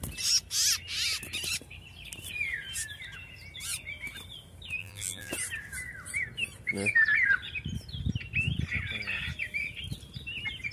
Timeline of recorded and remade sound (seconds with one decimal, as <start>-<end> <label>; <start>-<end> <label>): 0.0-4.8 recorded; 4.8-5.3 remade; 5.3-10.7 recorded